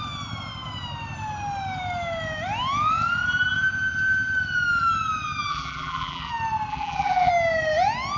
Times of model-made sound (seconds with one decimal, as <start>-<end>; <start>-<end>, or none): 5.5-6.3; 6.7-7.3